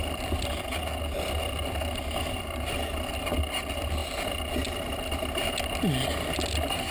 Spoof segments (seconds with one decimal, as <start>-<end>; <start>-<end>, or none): none